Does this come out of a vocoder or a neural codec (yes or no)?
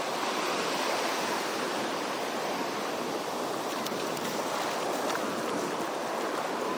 yes